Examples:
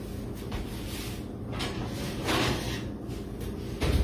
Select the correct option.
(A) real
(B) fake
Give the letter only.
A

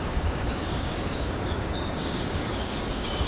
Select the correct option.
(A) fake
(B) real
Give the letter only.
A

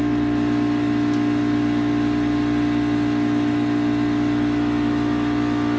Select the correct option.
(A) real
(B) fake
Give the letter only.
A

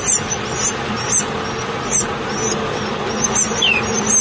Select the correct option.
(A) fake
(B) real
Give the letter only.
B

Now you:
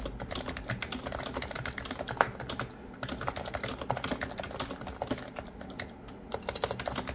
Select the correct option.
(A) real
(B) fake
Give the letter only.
A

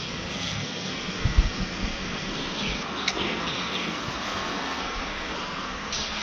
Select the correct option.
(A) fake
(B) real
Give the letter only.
A